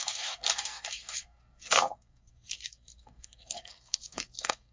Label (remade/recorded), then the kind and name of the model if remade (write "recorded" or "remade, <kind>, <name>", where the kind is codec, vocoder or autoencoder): remade, codec, SNAC